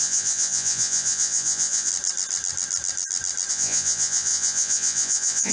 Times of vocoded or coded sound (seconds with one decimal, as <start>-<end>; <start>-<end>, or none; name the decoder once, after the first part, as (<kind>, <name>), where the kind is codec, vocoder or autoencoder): 0.0-1.9 (vocoder, Vocos); 3.5-5.5